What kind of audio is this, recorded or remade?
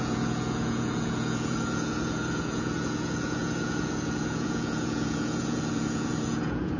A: remade